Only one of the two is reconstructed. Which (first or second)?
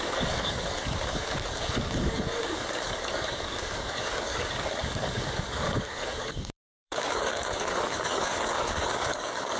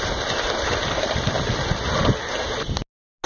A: first